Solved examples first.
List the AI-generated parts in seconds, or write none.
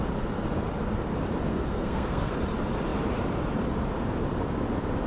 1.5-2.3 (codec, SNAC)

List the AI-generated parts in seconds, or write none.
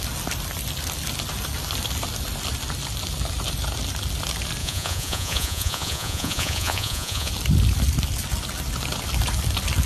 4.6-7.3 (vocoder, Vocos)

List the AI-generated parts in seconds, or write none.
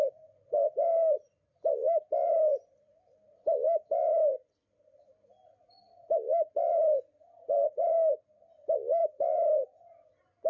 0.9-1.6 (vocoder, BigVGAN v2); 7.6-8.2; 9.0-9.8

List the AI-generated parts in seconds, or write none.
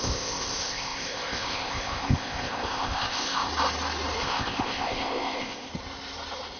0.0-3.5 (codec, ZipCodec); 4.2-5.7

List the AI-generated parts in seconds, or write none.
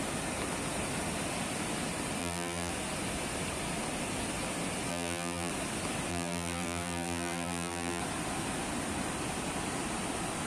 2.2-2.7 (vocoder, BigVGAN v2); 4.9-5.5; 6.1-8.0